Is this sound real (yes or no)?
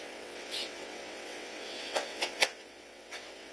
no